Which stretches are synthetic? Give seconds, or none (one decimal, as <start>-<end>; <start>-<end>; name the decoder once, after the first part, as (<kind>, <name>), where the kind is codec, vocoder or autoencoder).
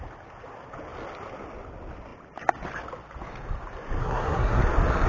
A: 4.0-4.6 (codec, SNAC)